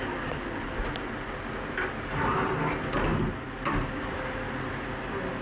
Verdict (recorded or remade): recorded